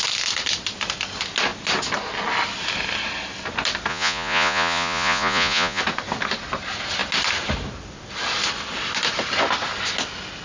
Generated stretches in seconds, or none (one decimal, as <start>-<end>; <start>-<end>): 3.9-5.8